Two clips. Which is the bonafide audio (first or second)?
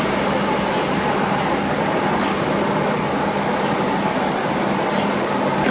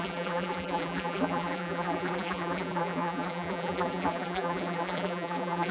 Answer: first